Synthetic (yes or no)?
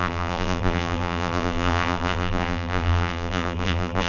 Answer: yes